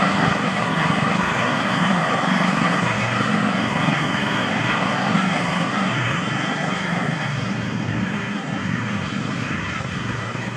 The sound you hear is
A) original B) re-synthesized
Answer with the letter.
B